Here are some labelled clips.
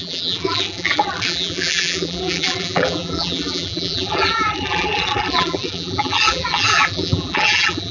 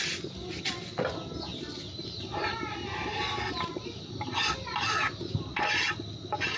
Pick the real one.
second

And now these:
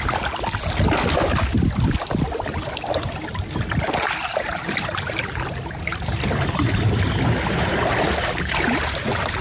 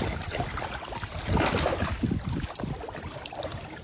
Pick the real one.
first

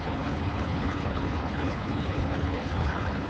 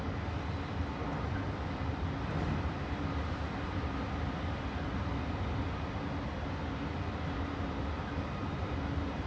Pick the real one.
second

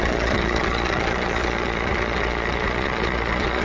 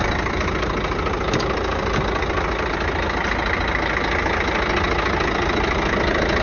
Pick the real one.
second